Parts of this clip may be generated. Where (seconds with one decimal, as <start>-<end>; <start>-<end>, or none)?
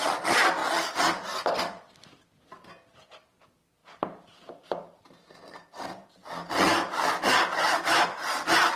0.6-2.2